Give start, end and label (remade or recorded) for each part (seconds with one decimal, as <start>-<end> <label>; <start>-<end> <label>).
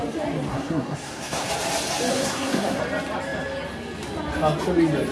0.0-0.5 recorded; 0.5-1.5 remade; 1.5-2.1 recorded; 2.1-2.8 remade; 2.8-5.1 recorded